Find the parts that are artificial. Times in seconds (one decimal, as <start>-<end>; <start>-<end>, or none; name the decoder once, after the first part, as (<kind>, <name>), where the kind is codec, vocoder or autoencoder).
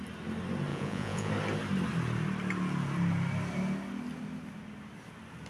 0.7-1.3 (vocoder, Vocos)